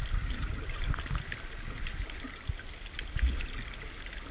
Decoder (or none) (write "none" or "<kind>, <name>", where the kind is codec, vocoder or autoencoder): none